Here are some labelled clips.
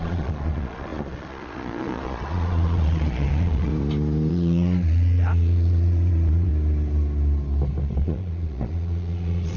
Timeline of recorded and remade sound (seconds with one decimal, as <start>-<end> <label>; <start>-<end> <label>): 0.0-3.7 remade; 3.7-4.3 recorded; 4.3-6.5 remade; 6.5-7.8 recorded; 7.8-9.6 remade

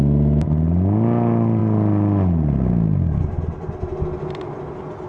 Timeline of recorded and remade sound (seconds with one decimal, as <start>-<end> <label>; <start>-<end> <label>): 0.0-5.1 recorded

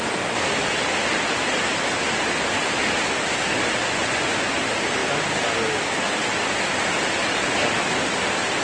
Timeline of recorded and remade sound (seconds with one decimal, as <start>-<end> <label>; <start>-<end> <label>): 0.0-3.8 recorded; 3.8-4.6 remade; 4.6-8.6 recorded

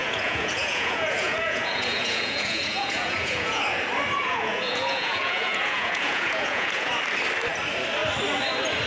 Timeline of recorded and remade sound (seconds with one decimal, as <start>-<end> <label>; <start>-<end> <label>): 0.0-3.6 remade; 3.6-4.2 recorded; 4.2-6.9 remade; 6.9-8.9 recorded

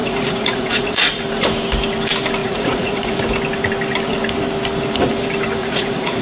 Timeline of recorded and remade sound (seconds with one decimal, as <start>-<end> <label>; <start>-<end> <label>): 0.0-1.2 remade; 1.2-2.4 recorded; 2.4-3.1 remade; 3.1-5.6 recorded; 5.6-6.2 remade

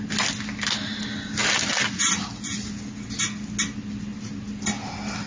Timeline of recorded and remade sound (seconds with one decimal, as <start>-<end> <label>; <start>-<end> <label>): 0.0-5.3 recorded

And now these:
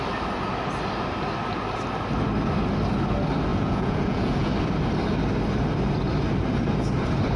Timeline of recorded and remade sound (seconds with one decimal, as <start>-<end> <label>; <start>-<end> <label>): 0.0-3.5 recorded; 3.5-4.5 remade; 4.5-7.4 recorded